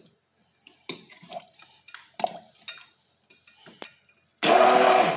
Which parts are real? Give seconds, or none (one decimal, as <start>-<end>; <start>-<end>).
0.0-5.2